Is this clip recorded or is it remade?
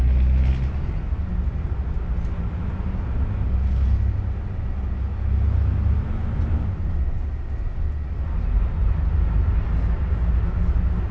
recorded